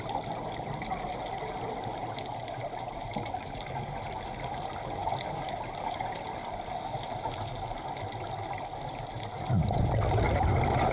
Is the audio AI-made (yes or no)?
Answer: no